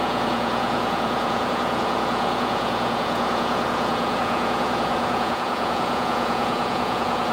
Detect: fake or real fake